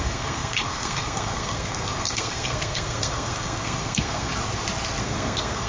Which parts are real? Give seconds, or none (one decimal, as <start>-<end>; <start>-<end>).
4.3-5.0